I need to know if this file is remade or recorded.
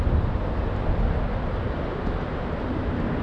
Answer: recorded